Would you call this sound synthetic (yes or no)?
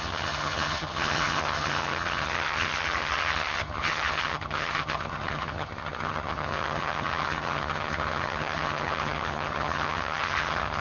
yes